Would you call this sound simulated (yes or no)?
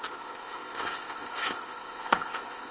yes